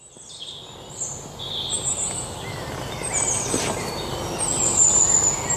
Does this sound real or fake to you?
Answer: real